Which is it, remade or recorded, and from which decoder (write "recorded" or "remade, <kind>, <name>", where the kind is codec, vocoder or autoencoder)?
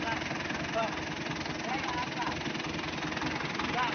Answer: recorded